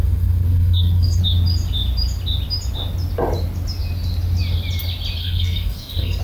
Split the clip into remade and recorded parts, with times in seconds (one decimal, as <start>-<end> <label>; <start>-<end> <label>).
0.0-1.2 remade; 1.2-5.2 recorded; 5.2-6.2 remade